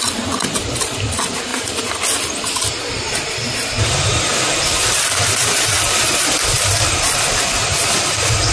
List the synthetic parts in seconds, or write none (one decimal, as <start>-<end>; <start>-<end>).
none